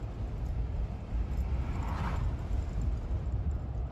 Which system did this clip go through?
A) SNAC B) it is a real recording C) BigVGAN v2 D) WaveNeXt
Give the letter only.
B